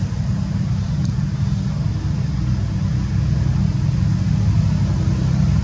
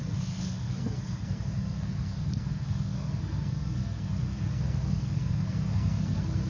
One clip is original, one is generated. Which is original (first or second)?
first